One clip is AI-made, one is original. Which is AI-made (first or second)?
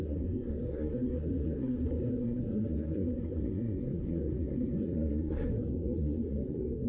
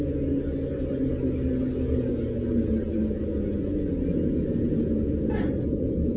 first